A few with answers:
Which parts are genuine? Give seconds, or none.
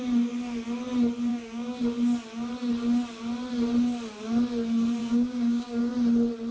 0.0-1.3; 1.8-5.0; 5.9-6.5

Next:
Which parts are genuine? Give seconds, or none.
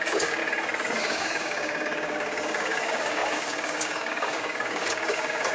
0.4-1.0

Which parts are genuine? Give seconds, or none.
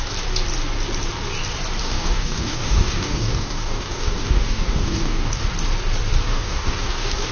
0.0-1.8; 5.4-6.3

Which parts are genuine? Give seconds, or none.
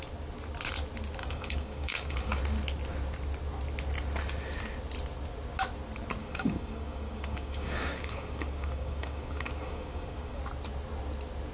0.0-1.2; 2.4-6.2; 10.4-11.5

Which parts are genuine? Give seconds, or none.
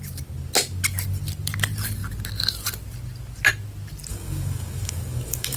0.0-4.1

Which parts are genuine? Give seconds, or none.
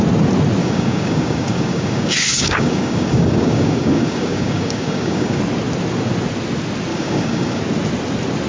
0.0-0.6; 5.4-6.9; 7.6-8.5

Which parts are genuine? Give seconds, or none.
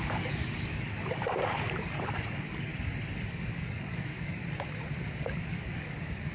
2.7-3.3; 4.4-5.2